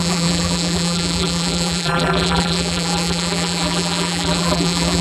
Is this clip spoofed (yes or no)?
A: yes